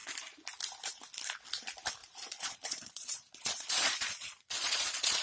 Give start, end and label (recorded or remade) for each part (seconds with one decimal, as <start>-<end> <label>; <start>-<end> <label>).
0.0-2.0 recorded; 2.0-5.2 remade